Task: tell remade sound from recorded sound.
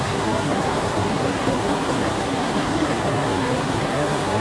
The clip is remade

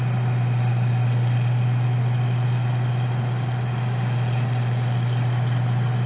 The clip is recorded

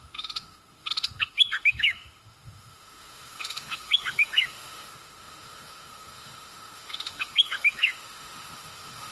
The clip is remade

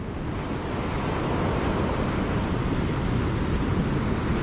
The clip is recorded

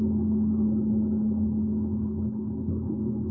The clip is remade